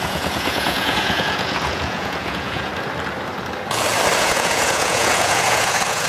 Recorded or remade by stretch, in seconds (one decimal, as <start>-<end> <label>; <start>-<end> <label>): 0.0-2.7 remade; 2.7-4.2 recorded; 4.2-6.1 remade